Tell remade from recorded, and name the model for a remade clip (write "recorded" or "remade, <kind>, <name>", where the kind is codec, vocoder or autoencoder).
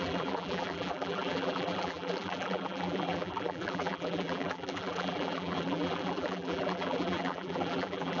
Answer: remade, vocoder, BigVGAN v2